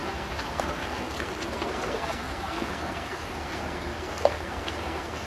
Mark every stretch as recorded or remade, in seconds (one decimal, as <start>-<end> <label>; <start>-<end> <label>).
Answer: 0.0-5.3 remade